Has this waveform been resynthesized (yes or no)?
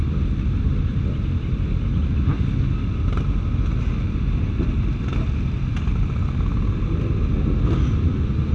no